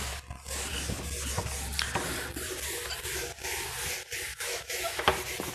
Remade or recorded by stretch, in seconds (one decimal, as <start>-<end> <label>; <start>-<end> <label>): 0.0-4.3 recorded; 4.3-5.1 remade; 5.1-5.5 recorded